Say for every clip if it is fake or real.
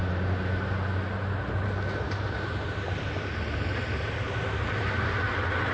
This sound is real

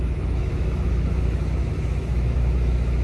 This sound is fake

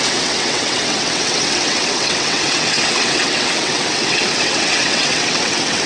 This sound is fake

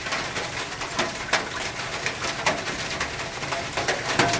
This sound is real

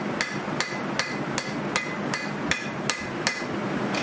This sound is real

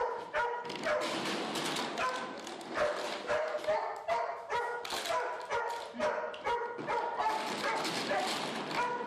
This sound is real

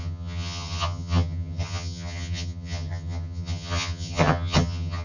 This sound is fake